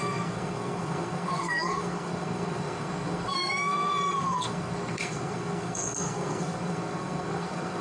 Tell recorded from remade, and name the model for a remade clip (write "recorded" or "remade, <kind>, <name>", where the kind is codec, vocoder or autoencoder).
remade, codec, SNAC